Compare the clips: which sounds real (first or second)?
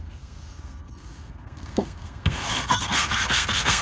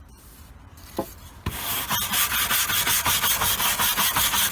second